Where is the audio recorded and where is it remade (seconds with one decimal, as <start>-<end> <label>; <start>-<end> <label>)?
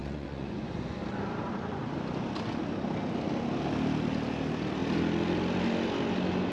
0.0-1.0 remade; 1.0-6.5 recorded